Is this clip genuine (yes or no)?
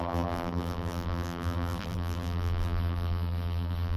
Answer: no